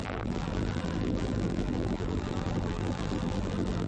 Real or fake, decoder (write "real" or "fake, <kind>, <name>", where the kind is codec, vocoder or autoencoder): fake, vocoder, BigVGAN v2